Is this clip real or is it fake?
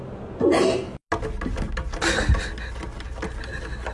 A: real